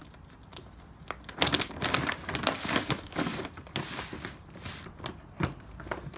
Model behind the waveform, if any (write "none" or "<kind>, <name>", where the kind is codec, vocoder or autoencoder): none